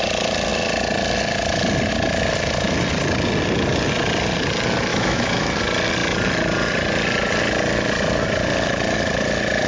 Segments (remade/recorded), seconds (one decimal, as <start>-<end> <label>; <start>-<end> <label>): 0.0-4.9 recorded; 4.9-5.6 remade; 5.6-9.7 recorded